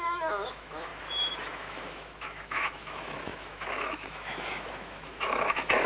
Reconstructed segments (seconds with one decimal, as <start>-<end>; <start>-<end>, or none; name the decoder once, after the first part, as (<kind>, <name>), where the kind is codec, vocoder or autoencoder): 0.0-5.9 (autoencoder, DAC-VAE)